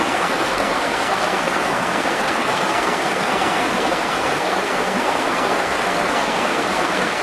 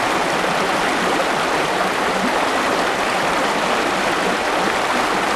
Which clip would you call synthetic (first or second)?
first